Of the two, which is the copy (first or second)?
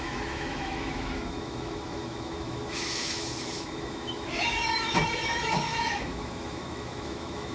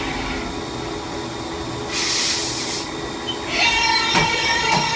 first